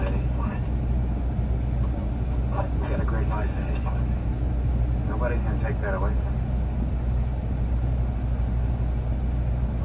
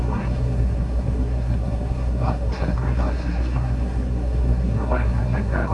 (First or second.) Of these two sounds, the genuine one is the first